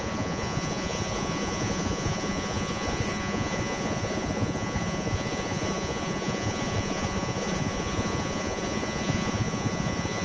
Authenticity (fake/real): fake